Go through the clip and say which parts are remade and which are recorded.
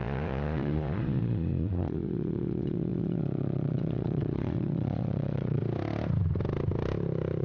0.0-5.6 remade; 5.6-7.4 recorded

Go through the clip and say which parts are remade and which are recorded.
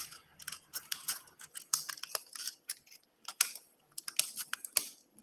0.0-1.9 remade; 1.9-3.3 recorded; 3.3-4.0 remade; 4.0-5.2 recorded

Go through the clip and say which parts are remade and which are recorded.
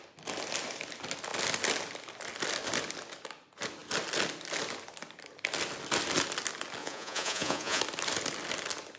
0.0-6.8 recorded; 6.8-7.8 remade; 7.8-9.0 recorded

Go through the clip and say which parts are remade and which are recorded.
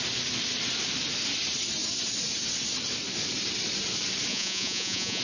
0.0-4.3 recorded; 4.3-5.2 remade